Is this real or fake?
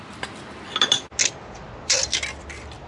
real